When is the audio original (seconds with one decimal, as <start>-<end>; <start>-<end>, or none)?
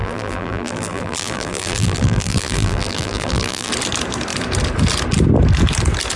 3.7-6.2